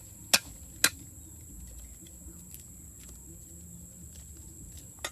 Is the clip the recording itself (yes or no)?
yes